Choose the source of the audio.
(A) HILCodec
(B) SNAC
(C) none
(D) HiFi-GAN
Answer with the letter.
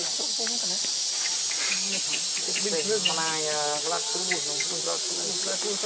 C